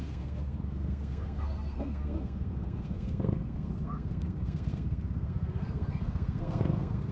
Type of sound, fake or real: fake